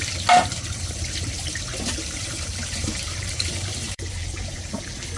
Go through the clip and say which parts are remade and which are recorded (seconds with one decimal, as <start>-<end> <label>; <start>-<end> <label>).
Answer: 0.0-1.7 recorded; 1.7-4.7 remade; 4.7-5.2 recorded